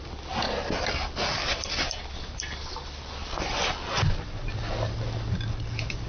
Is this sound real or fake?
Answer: real